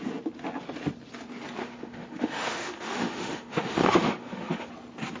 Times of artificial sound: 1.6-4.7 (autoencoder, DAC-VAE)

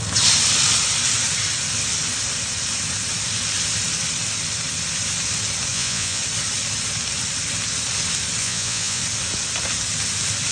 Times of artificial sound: 5.7-6.2 (vocoder, Vocos); 8.4-9.0